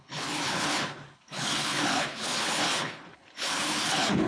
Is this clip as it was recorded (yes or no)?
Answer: no